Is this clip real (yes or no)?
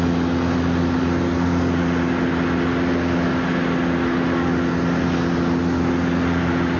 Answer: yes